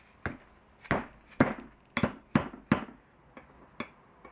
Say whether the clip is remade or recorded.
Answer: recorded